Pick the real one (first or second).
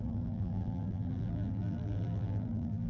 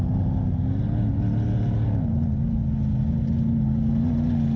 second